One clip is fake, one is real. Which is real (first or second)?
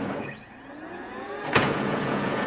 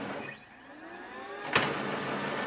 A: second